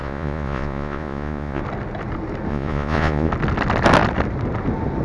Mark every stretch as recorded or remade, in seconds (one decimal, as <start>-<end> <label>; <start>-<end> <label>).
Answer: 0.0-1.6 remade; 1.6-2.5 recorded; 2.5-3.3 remade; 3.3-5.0 recorded